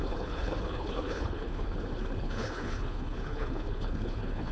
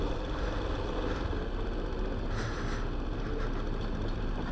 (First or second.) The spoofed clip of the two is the first